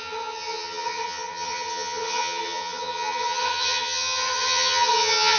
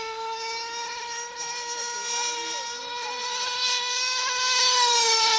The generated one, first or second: first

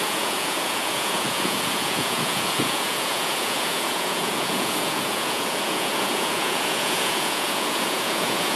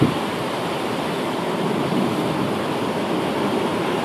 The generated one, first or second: first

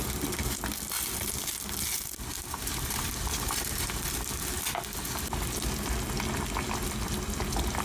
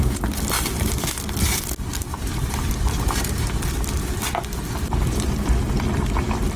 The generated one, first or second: second